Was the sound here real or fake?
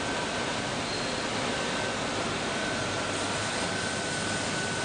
real